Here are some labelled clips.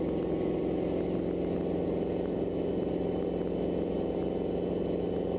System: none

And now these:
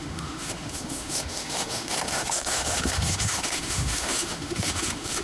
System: autoencoder, DAC-VAE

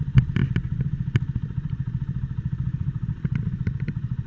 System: vocoder, BigVGAN v2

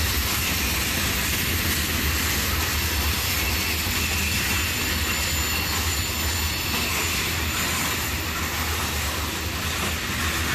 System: none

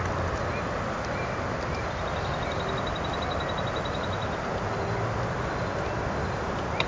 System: none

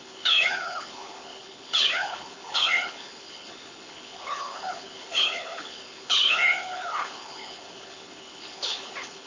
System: codec, HILCodec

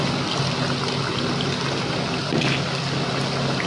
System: none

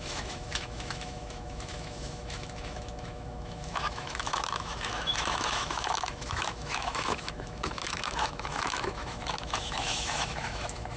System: autoencoder, DAC-VAE